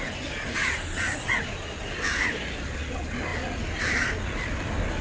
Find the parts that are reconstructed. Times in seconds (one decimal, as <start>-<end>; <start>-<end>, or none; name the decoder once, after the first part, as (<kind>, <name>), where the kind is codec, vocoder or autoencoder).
none